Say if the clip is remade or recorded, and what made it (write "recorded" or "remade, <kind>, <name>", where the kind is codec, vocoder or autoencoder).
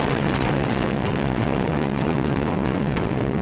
remade, vocoder, WaveNeXt